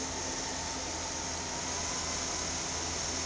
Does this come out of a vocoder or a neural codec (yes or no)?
no